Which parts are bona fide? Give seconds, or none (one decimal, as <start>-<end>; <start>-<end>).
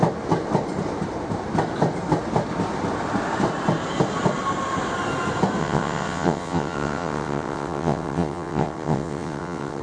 0.0-5.6